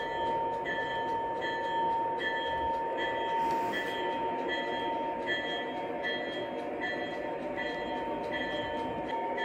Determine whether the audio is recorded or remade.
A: recorded